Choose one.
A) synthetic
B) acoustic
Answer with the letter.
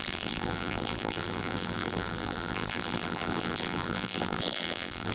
A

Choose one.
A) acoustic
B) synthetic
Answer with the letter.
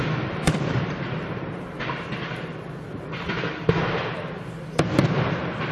B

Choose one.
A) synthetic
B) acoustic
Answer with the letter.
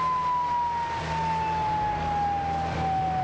B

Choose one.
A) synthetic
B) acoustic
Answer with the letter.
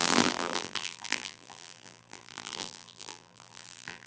A